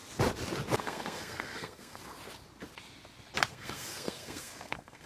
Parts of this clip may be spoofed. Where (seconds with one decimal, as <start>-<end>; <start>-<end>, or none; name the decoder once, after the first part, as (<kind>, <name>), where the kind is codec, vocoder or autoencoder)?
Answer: 0.8-2.0 (codec, SNAC); 3.5-5.1

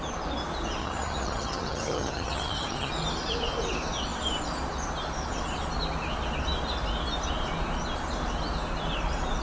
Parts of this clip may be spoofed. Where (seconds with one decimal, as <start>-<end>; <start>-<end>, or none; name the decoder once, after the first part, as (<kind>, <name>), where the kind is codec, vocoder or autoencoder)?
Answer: 0.8-2.9 (vocoder, HiFi-GAN)